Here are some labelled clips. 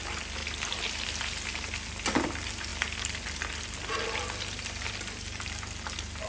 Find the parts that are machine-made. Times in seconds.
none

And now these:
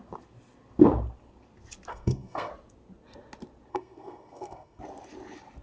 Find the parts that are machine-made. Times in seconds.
1.9-2.5; 3.7-4.8

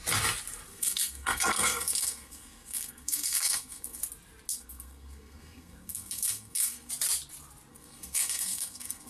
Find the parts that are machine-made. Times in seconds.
0.7-4.0; 4.5-6.9; 7.7-9.1

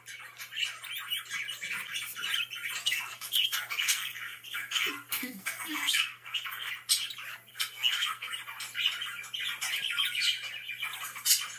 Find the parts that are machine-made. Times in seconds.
2.8-6.7; 7.5-8.3

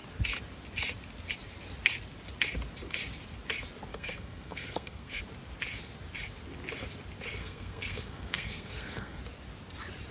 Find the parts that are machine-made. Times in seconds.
3.9-5.2; 7.4-9.2

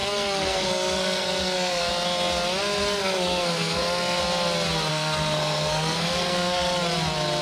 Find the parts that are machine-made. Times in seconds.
0.0-1.9; 2.8-4.2; 4.9-6.8

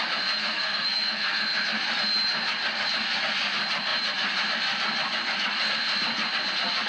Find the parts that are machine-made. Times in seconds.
0.4-1.4